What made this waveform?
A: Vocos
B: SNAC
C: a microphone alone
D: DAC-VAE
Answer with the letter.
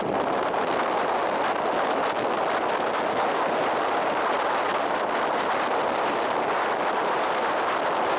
C